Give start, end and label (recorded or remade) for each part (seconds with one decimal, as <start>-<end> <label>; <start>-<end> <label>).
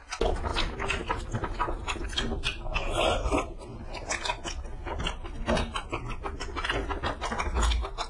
0.0-8.1 recorded